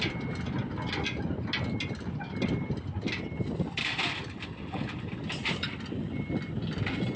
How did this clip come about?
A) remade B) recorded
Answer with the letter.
B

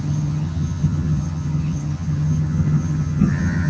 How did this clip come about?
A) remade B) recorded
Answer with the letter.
A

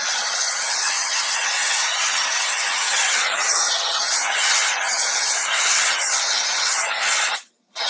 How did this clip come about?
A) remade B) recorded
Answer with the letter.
A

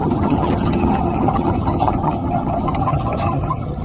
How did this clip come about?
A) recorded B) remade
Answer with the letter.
B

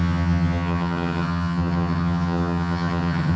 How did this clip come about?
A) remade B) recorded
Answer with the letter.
A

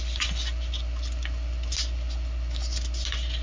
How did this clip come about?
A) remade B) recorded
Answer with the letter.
B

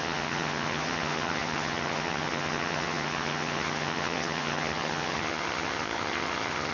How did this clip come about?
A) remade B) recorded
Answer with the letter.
A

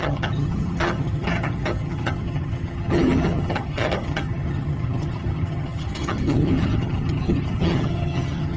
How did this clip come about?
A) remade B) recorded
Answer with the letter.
A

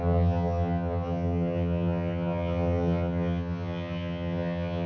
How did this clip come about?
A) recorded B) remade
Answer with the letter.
B